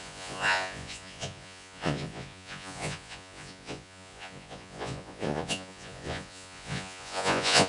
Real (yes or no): no